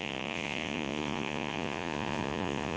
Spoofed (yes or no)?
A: yes